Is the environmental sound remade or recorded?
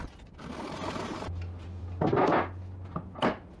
recorded